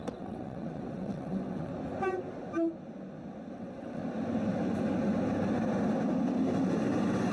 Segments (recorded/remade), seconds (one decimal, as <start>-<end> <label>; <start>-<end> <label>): 0.0-1.7 remade; 1.7-3.5 recorded; 3.5-4.0 remade; 4.0-7.3 recorded